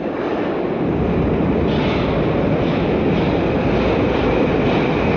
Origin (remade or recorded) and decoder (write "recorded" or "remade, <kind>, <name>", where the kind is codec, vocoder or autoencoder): recorded